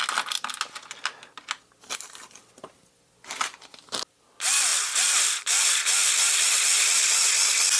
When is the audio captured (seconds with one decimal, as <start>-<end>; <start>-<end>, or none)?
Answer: 0.0-7.8